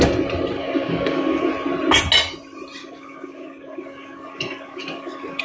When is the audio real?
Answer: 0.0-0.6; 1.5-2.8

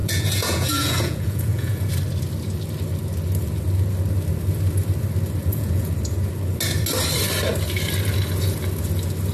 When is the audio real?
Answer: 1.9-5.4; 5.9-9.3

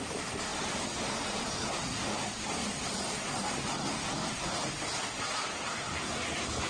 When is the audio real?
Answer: 0.0-6.7

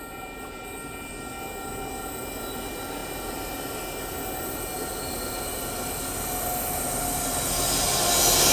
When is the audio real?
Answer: 0.0-8.5

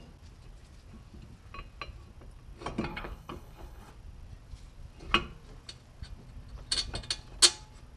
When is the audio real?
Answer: 0.0-2.9; 3.9-8.0